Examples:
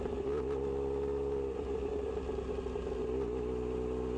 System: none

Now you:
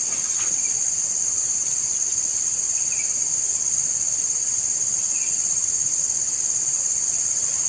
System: none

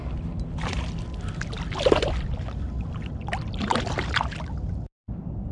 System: none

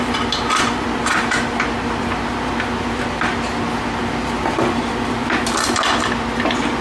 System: none